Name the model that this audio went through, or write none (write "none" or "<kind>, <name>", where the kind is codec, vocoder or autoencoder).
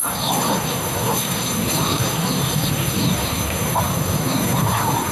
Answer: codec, SNAC